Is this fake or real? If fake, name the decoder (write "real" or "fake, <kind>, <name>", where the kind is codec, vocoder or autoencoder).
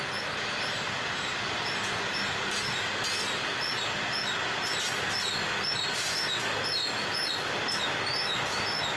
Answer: real